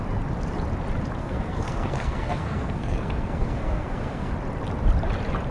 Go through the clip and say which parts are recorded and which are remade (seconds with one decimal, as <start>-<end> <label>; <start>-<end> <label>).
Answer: 0.0-1.2 recorded; 1.2-4.3 remade; 4.3-5.5 recorded